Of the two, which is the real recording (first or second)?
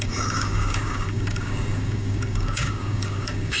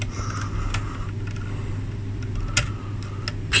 second